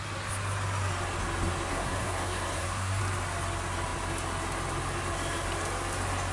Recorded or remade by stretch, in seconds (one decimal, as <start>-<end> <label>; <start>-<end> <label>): 0.0-1.7 recorded; 1.7-3.0 remade; 3.0-6.3 recorded